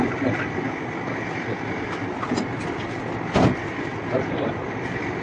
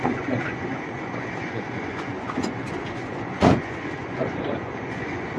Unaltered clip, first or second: first